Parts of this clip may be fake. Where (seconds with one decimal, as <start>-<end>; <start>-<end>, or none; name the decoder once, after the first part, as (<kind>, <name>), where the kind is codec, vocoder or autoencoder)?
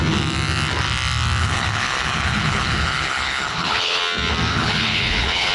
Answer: 1.4-4.0 (codec, HILCodec); 4.5-5.5